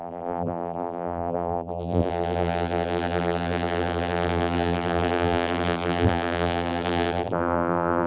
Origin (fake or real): fake